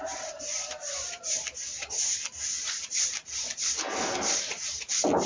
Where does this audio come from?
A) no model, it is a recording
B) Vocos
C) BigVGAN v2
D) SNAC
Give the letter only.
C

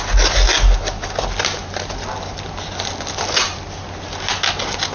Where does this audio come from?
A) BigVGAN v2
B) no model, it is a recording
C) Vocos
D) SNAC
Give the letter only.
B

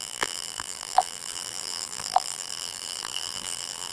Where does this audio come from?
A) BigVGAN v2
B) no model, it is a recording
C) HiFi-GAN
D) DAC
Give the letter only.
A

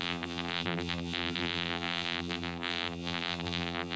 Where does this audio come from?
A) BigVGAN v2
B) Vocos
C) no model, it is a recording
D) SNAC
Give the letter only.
A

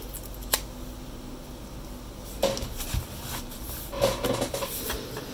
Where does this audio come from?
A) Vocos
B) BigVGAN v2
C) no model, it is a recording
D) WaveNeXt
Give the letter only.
C